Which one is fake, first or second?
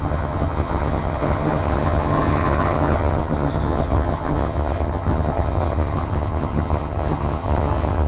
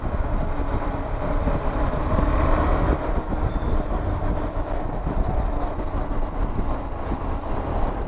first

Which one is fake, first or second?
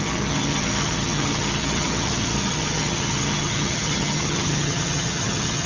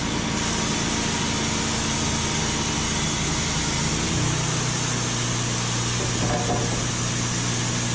first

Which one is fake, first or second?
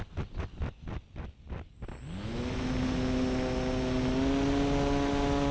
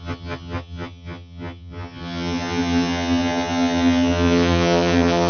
second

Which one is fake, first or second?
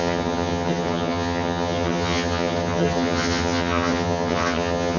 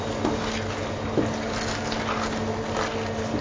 first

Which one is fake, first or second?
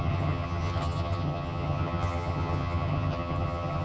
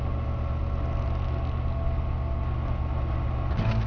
first